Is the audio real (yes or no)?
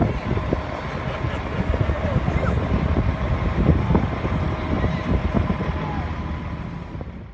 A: yes